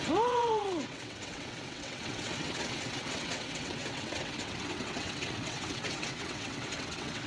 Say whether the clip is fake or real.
fake